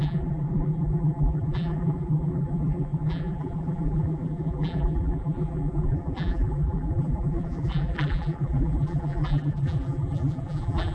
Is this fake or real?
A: fake